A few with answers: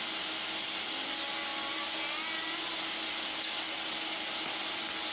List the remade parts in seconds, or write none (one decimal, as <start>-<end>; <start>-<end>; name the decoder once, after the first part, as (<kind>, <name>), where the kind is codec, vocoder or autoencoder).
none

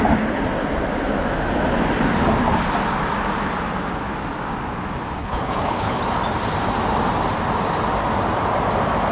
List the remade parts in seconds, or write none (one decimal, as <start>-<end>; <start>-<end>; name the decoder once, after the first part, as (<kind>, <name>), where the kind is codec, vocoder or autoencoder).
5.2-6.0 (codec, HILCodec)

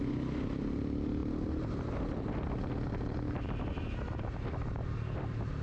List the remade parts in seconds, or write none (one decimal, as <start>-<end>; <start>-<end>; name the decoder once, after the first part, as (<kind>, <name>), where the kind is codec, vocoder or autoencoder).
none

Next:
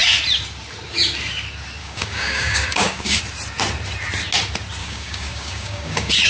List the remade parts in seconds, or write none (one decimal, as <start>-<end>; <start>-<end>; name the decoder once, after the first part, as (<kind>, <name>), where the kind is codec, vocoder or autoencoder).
1.8-3.2 (codec, DAC); 4.8-6.3

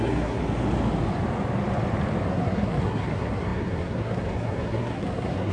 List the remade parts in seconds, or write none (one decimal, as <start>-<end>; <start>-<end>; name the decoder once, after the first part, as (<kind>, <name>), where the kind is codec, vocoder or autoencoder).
0.0-0.4 (codec, SNAC); 2.3-5.5

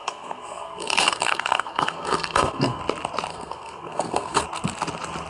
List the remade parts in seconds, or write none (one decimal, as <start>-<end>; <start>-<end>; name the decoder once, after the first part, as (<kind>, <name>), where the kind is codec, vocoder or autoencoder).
0.0-2.8 (codec, SNAC); 3.3-4.4